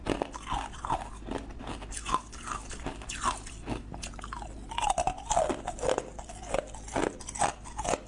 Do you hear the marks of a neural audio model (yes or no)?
no